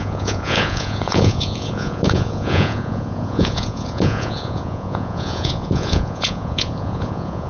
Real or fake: fake